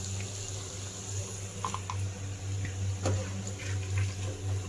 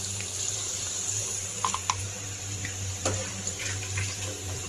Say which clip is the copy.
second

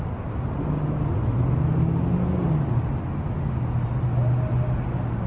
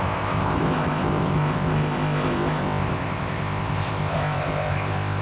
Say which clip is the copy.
second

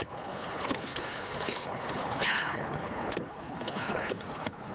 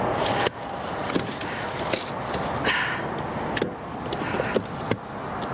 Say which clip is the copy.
first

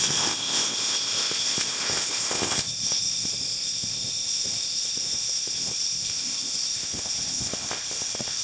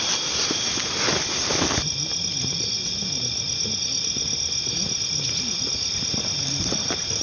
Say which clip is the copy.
first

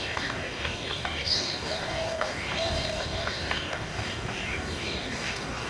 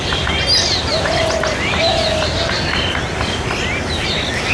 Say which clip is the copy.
first